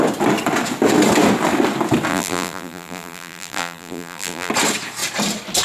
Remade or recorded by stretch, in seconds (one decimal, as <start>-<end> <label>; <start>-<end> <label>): 0.0-2.1 recorded; 2.1-4.5 remade; 4.5-5.6 recorded